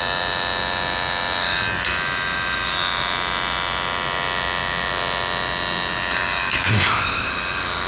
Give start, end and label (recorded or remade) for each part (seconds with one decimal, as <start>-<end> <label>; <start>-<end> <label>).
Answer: 0.0-6.7 recorded; 6.7-7.3 remade; 7.3-7.9 recorded